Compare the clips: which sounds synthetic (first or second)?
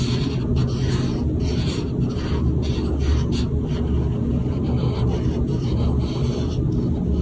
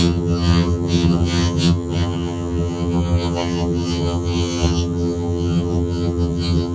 second